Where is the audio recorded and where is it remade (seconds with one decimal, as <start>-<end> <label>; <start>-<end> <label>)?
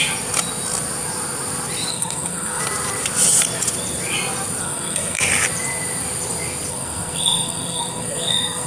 0.0-1.9 recorded; 1.9-2.6 remade; 2.6-4.6 recorded; 4.6-5.2 remade; 5.2-6.7 recorded; 6.7-8.7 remade